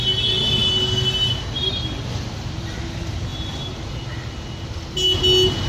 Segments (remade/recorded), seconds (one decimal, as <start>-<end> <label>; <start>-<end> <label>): 0.0-5.7 recorded

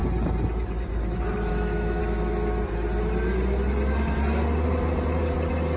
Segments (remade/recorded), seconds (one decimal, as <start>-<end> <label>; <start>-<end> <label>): 0.0-1.5 recorded; 1.5-2.0 remade; 2.0-5.8 recorded